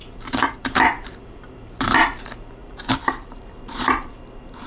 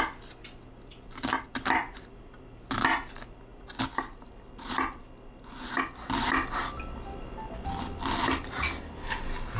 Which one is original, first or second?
second